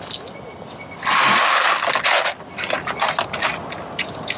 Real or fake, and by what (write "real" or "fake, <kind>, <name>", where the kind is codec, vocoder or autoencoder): real